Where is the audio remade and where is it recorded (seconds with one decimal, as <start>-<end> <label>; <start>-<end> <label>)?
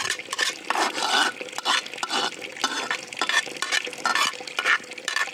0.0-2.5 remade; 2.5-3.0 recorded; 3.0-5.3 remade